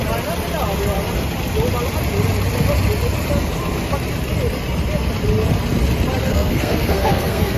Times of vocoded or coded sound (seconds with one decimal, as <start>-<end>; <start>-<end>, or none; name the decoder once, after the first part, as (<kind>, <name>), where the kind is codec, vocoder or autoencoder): 6.3-7.6 (codec, SNAC)